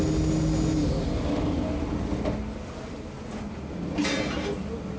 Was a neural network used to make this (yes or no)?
no